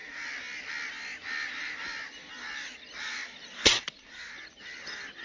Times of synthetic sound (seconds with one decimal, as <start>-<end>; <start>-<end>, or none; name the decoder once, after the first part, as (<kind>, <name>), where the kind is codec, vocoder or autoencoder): none

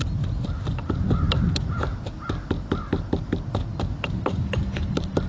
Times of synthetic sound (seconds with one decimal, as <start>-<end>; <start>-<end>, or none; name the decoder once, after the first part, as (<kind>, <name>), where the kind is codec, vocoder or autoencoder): none

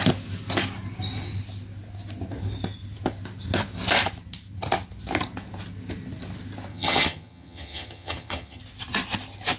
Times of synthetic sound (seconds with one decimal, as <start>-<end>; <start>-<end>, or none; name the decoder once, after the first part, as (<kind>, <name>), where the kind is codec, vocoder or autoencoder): 6.7-8.6 (vocoder, HiFi-GAN)

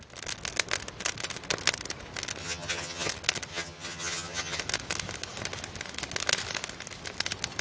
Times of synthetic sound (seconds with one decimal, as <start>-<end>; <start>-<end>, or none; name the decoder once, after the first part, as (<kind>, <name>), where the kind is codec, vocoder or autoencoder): 2.4-3.1 (vocoder, HiFi-GAN); 3.5-4.6

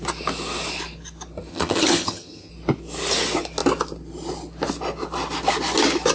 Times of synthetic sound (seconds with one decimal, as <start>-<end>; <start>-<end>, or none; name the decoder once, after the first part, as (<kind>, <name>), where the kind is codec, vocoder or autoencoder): 1.5-2.5 (vocoder, HiFi-GAN)